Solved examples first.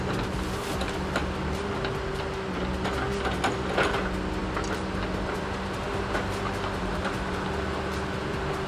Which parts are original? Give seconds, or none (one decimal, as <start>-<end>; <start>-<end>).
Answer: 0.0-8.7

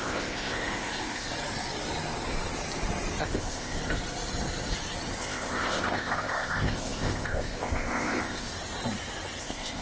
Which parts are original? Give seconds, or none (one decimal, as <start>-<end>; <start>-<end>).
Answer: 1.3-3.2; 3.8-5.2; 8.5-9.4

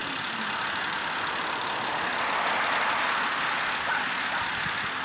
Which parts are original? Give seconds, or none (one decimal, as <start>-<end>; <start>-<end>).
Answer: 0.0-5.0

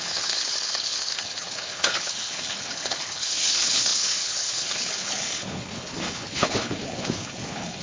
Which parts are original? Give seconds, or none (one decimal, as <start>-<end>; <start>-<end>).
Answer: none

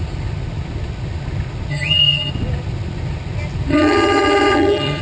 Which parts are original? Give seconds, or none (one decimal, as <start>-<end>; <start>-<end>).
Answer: 0.0-1.7; 2.3-3.7

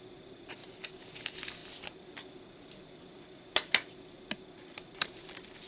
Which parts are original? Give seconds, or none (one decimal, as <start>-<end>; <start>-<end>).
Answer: 0.0-1.6; 5.0-5.7

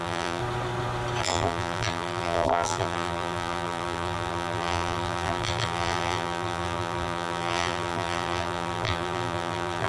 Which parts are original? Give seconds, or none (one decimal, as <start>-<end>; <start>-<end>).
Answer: 0.4-1.2